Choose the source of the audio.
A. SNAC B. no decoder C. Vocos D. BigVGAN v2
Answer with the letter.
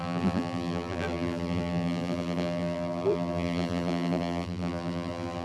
D